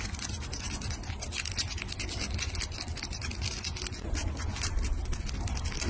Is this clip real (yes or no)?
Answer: yes